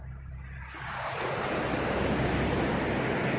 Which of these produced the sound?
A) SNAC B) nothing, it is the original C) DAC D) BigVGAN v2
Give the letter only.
B